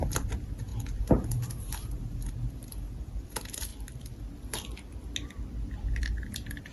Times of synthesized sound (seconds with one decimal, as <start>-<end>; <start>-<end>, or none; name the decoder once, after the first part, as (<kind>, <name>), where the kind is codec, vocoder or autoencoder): 0.0-3.7 (vocoder, BigVGAN v2); 6.0-6.7